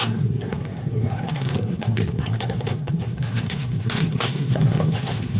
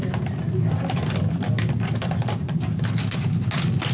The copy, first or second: first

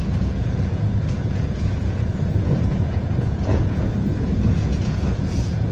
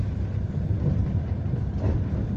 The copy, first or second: first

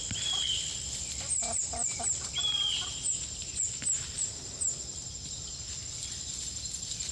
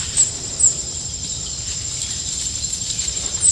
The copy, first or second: second